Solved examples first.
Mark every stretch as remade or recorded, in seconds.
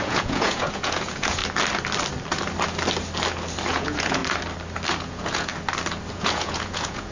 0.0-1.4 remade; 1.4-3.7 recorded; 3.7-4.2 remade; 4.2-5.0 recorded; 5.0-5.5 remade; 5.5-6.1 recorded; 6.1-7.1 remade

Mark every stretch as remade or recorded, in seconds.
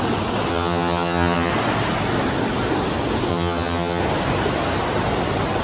0.0-0.5 recorded; 0.5-1.5 remade; 1.5-3.3 recorded; 3.3-4.0 remade; 4.0-5.6 recorded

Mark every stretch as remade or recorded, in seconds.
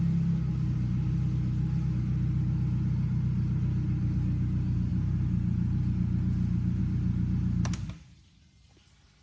0.0-9.2 recorded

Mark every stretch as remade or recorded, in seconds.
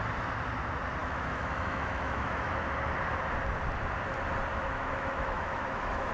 0.0-1.0 recorded; 1.0-2.5 remade; 2.5-4.5 recorded; 4.5-6.1 remade